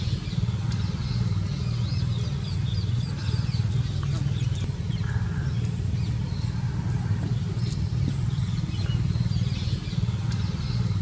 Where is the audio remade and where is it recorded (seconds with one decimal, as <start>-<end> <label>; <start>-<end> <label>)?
0.0-11.0 recorded